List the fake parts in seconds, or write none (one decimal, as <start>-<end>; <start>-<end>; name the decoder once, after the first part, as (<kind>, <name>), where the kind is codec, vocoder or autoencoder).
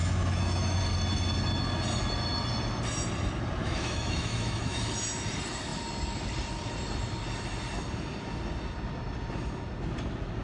0.0-0.8 (autoencoder, DAC-VAE); 3.6-4.9